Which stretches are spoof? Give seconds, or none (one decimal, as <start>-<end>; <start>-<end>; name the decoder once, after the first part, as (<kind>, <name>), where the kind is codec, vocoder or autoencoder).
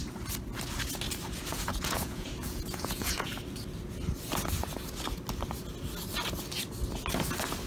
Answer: 1.5-3.3 (vocoder, Vocos)